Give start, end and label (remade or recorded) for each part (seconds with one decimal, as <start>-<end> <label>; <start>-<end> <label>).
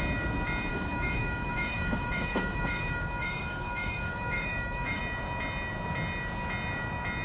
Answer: 0.0-0.7 recorded; 0.7-5.0 remade; 5.0-7.2 recorded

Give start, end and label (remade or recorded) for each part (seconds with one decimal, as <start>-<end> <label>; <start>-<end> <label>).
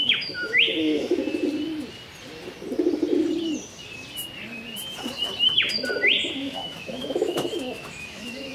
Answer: 0.0-1.2 remade; 1.2-6.3 recorded; 6.3-8.5 remade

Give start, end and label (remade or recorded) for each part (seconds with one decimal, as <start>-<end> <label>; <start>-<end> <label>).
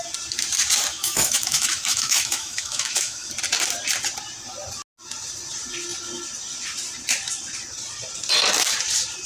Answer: 0.0-0.9 recorded; 0.9-3.3 remade; 3.3-9.3 recorded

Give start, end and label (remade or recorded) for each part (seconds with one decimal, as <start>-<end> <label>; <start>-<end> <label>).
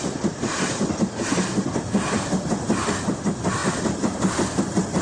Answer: 0.0-5.0 recorded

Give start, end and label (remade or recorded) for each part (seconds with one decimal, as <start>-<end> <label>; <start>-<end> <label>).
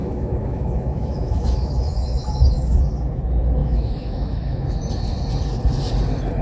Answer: 0.0-2.8 remade; 2.8-3.6 recorded; 3.6-4.8 remade; 4.8-6.4 recorded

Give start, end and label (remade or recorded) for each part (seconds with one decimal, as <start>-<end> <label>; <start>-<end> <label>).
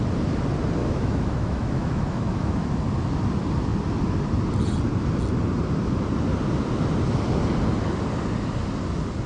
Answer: 0.0-0.8 recorded; 0.8-2.7 remade; 2.7-9.3 recorded